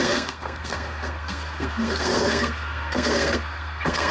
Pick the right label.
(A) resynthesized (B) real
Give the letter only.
A